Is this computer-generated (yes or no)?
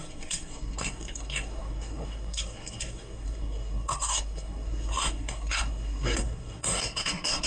yes